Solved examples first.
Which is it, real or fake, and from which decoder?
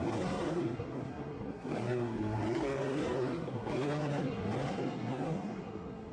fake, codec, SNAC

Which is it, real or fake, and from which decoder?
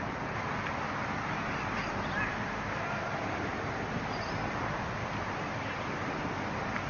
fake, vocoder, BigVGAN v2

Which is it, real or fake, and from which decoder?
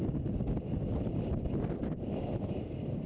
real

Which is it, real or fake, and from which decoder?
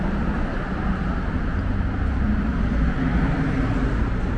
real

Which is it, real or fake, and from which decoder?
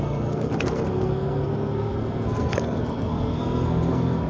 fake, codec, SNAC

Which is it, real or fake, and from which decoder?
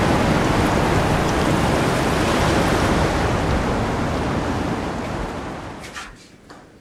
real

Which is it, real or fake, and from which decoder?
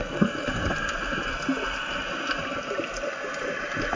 real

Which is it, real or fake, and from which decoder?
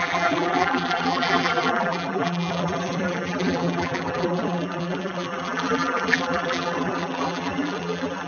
fake, vocoder, BigVGAN v2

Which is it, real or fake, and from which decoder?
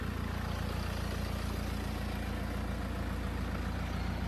real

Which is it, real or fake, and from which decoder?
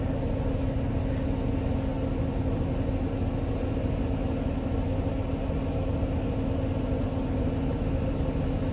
real